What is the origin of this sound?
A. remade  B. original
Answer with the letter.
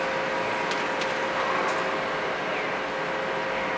B